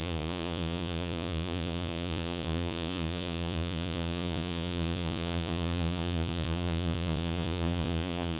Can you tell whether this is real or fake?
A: fake